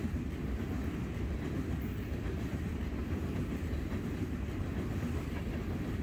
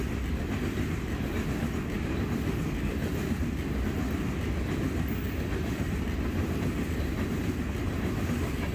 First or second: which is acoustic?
second